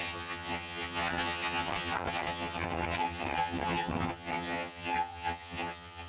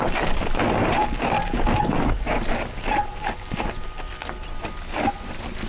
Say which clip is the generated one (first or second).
first